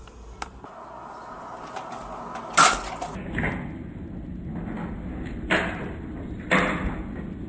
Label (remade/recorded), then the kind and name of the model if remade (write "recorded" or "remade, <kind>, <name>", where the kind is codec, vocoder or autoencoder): recorded